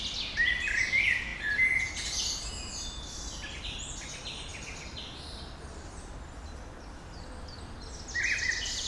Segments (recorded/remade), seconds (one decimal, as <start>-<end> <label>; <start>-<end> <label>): 0.0-8.9 recorded